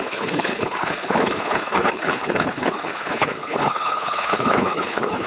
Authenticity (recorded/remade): remade